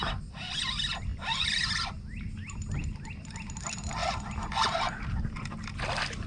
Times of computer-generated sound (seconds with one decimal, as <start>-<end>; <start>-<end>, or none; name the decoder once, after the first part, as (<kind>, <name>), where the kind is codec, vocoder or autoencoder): none